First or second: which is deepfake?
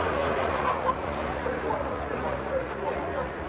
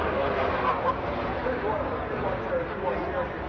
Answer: first